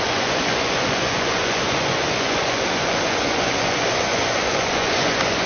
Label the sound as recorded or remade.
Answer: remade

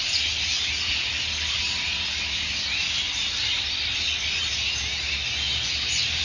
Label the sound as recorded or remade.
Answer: recorded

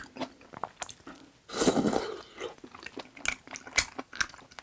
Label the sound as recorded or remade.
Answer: recorded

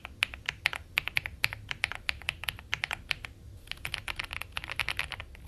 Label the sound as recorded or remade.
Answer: recorded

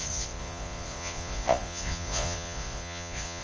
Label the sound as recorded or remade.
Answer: remade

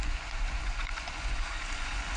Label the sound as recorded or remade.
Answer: remade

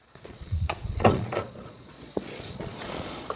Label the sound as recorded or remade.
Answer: remade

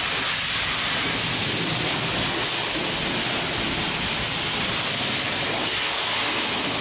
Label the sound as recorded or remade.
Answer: recorded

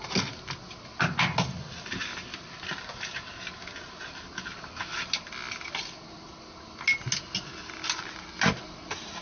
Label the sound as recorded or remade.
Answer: recorded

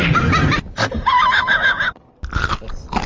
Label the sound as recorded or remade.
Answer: recorded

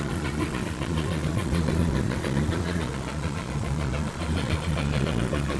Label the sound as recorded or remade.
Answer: remade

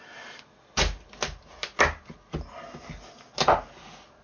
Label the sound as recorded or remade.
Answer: recorded